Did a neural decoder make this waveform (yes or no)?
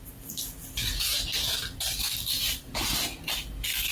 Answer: no